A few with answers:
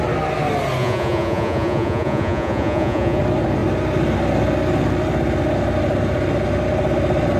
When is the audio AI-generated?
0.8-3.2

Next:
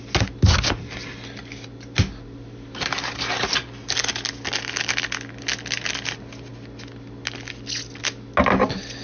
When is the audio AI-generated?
none